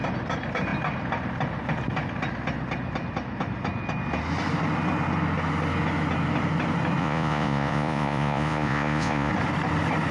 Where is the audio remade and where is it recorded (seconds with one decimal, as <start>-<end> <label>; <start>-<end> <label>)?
0.0-7.0 recorded; 7.0-9.3 remade; 9.3-10.1 recorded